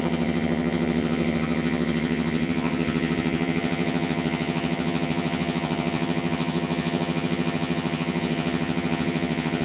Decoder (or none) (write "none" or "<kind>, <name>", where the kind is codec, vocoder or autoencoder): vocoder, HiFi-GAN